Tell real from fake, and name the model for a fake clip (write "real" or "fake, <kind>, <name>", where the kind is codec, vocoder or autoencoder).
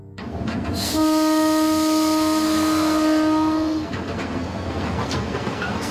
fake, codec, SNAC